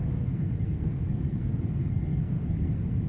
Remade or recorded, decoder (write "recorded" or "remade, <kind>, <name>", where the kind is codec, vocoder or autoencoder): remade, codec, SNAC